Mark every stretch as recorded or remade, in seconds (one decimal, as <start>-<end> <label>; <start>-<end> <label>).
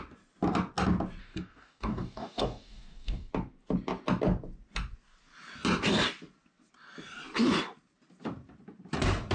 0.0-1.2 recorded; 1.2-3.3 remade; 3.3-9.3 recorded